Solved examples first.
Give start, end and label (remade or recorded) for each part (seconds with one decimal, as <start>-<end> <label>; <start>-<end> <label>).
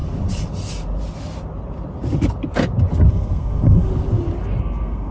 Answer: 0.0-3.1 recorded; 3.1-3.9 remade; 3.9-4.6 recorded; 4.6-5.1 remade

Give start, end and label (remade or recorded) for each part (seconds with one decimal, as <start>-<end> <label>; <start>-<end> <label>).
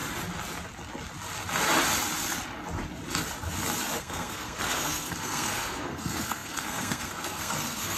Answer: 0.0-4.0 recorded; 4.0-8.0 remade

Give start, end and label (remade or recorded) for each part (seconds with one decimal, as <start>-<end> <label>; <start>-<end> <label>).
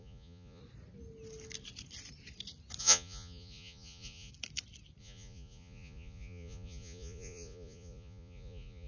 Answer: 0.0-0.6 remade; 0.6-2.8 recorded; 2.8-4.3 remade; 4.3-5.0 recorded; 5.0-8.9 remade